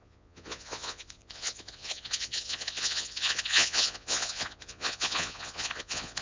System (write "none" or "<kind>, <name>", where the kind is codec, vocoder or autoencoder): vocoder, Vocos